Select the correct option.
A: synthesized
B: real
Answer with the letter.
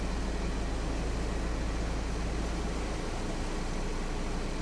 B